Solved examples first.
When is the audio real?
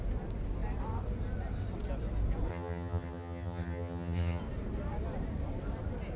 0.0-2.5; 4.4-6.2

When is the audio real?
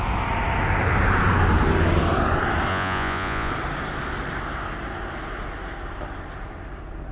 0.0-2.7; 3.5-7.1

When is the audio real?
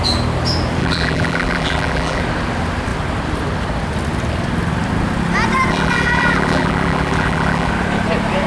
0.0-0.8; 2.2-5.7; 7.7-8.5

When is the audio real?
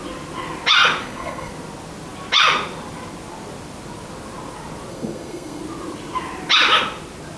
0.0-1.0; 1.5-4.9; 5.6-7.4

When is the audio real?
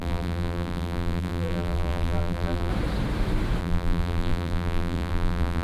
2.7-3.6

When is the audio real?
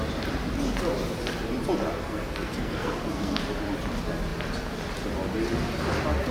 0.0-2.0; 3.4-6.3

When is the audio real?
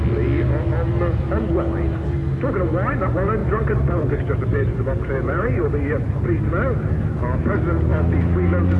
0.0-3.4; 6.1-8.8